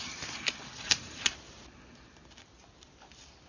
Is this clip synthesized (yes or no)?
yes